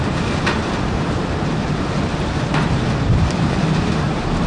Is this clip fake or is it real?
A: fake